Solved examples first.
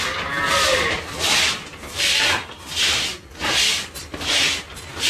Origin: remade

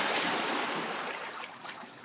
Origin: remade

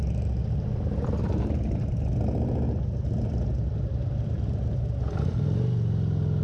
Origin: remade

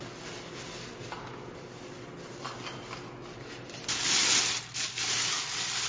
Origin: recorded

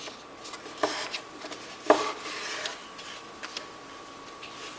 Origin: recorded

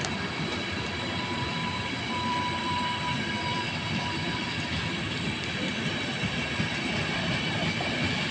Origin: remade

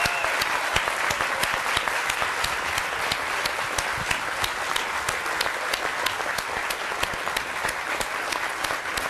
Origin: recorded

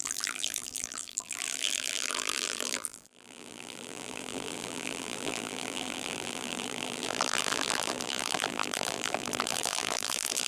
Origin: remade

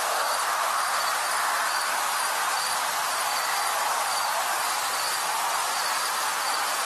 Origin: recorded